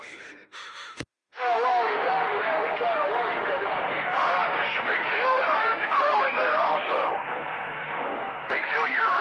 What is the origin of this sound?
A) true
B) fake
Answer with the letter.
B